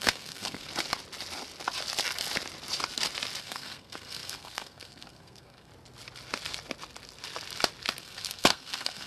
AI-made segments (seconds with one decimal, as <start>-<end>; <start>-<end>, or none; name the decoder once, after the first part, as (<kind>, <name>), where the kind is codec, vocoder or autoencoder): 0.0-0.7 (codec, SNAC); 3.4-5.7; 8.0-9.1